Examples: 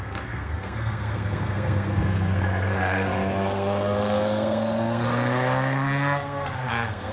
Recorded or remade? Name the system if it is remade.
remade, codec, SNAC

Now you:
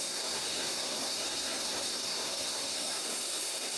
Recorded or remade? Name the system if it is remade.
remade, codec, SNAC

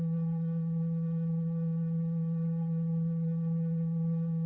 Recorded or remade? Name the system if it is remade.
remade, codec, SNAC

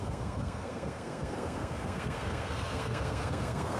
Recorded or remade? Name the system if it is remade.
remade, codec, SNAC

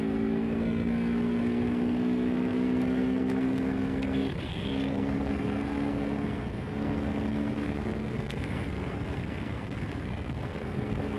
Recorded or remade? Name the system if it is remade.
remade, codec, SNAC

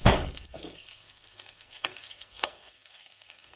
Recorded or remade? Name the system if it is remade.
remade, codec, SNAC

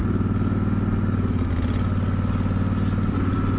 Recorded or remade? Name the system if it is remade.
recorded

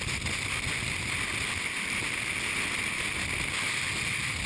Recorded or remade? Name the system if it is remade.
recorded